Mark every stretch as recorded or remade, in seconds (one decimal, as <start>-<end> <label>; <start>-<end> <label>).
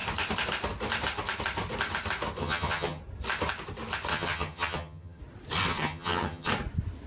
0.0-2.4 recorded; 2.4-3.0 remade; 3.0-4.1 recorded; 4.1-5.2 remade; 5.2-5.7 recorded; 5.7-6.5 remade; 6.5-7.1 recorded